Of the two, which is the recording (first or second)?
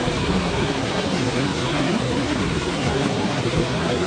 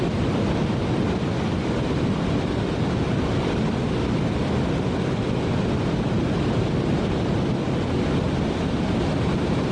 second